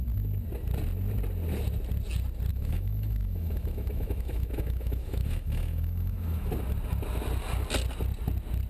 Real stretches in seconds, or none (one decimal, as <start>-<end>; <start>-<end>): 0.0-2.5; 6.5-8.7